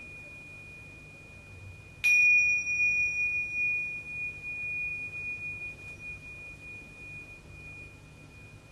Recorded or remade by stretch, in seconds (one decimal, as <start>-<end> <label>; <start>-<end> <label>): 0.0-8.7 recorded